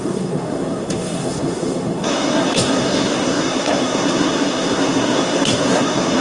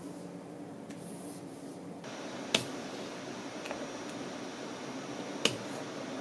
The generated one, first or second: first